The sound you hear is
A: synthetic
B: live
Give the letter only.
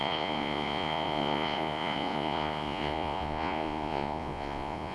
A